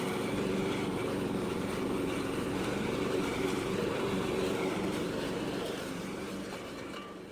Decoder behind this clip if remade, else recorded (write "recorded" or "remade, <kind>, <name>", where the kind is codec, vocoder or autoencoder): remade, vocoder, BigVGAN v2